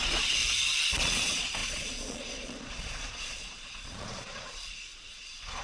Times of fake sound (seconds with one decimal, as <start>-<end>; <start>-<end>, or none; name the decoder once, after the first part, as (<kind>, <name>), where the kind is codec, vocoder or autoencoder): 0.0-0.4 (vocoder, Vocos); 0.9-5.6